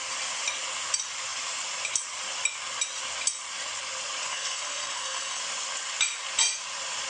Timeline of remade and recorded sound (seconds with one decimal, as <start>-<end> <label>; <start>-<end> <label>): 0.0-4.3 recorded; 4.3-5.4 remade; 5.4-7.1 recorded